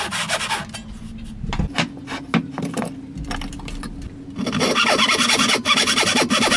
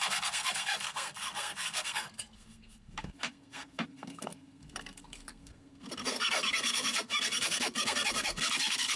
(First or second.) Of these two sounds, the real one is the first